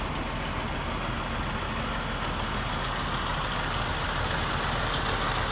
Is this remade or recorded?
recorded